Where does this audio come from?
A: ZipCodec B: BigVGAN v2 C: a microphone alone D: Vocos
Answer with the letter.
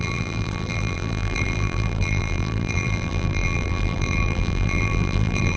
B